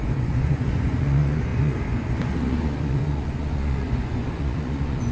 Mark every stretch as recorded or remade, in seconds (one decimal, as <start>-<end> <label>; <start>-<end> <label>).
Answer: 0.0-5.1 remade